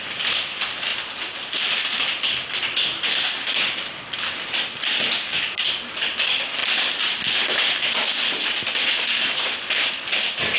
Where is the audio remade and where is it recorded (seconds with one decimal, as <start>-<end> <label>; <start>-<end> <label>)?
0.0-0.9 remade; 0.9-1.8 recorded; 1.8-6.6 remade; 6.6-9.9 recorded; 9.9-10.6 remade